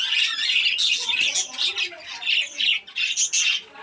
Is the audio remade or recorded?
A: recorded